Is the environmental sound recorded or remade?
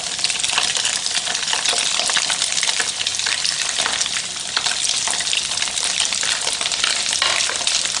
recorded